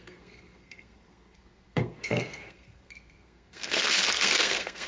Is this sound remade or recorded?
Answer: remade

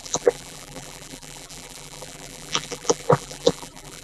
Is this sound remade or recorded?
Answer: remade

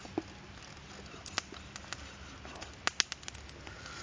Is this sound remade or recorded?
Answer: recorded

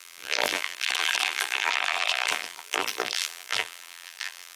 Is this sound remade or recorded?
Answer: remade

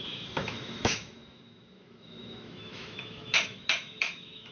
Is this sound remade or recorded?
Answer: remade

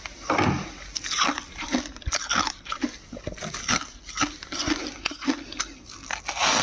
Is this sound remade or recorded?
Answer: recorded